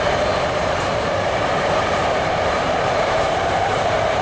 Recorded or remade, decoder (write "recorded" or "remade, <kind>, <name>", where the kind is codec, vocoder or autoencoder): remade, vocoder, BigVGAN v2